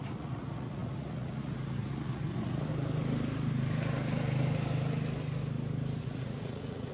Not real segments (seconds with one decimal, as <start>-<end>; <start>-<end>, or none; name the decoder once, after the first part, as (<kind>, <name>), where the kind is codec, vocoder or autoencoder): 0.0-2.7 (vocoder, Vocos); 6.0-6.9